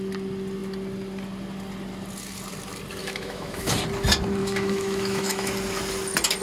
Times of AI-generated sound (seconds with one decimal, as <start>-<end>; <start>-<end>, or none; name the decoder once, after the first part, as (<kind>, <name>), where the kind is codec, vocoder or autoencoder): 3.0-3.7 (autoencoder, DAC-VAE); 4.4-5.5